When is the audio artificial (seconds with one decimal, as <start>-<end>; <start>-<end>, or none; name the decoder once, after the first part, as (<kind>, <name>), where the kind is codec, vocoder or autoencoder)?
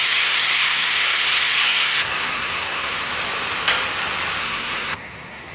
0.0-3.1 (codec, SNAC); 4.4-5.5